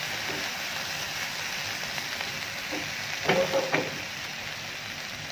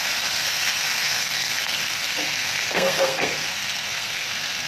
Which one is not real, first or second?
second